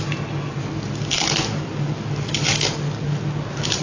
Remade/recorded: recorded